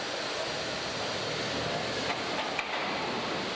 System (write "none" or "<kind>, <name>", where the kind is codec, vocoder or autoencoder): none